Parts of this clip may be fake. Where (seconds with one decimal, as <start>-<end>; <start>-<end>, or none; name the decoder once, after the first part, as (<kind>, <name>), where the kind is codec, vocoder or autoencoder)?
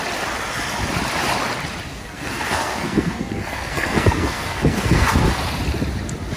1.9-5.3 (codec, SNAC)